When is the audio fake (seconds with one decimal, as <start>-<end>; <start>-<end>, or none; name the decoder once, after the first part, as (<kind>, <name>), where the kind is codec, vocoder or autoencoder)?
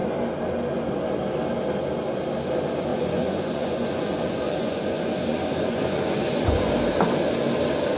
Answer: 2.9-6.7 (vocoder, Vocos)